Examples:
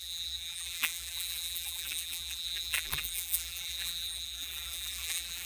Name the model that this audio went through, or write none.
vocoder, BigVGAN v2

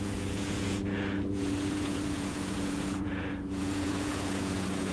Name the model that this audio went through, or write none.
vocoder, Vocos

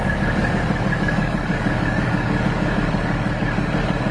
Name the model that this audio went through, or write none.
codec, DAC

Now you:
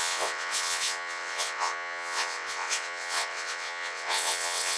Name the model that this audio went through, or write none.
vocoder, WaveNeXt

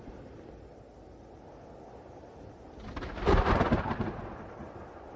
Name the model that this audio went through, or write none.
none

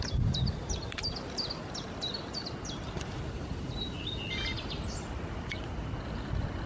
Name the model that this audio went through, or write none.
none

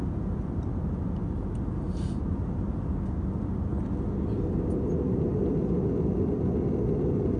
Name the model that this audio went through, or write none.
none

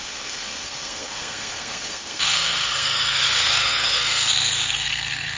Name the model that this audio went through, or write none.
codec, SNAC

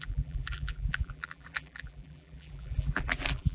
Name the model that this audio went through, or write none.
vocoder, BigVGAN v2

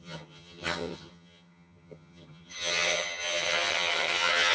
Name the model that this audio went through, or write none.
vocoder, HiFi-GAN